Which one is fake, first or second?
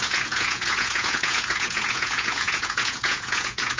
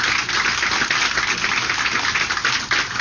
first